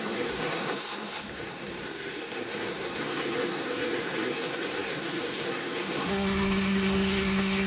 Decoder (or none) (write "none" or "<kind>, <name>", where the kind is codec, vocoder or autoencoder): codec, SNAC